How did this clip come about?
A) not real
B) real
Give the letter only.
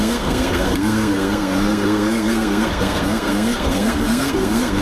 A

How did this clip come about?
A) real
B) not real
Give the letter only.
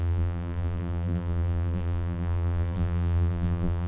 B